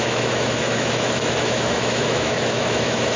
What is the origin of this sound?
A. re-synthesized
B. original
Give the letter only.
A